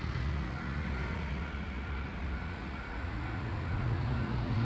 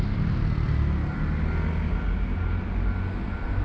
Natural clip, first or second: second